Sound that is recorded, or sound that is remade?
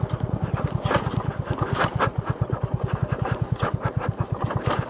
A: recorded